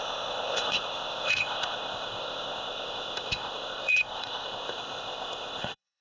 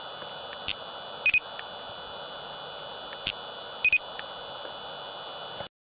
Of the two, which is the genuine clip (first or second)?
second